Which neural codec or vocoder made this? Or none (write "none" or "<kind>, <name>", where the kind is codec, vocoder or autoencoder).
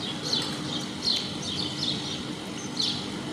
none